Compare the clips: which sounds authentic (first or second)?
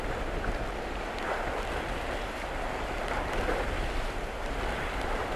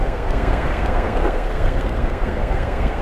first